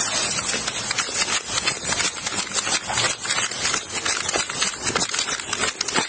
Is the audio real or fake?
real